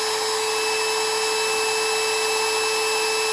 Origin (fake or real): real